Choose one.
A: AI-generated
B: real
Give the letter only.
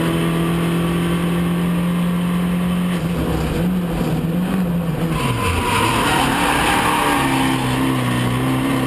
B